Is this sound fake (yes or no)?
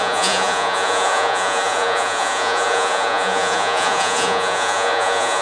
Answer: yes